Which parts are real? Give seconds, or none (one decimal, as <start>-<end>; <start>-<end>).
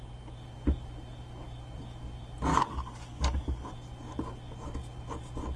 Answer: 0.0-2.5; 3.7-5.6